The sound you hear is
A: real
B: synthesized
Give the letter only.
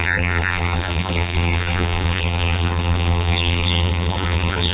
B